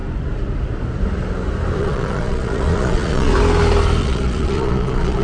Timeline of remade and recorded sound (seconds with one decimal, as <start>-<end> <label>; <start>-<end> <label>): 0.0-1.8 recorded; 1.8-3.3 remade; 3.3-4.0 recorded; 4.0-5.2 remade